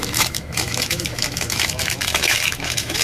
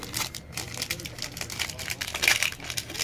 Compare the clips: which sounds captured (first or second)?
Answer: second